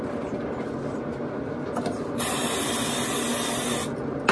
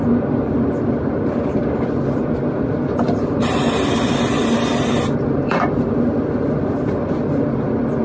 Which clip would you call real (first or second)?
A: first